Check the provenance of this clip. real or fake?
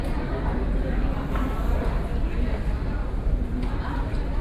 real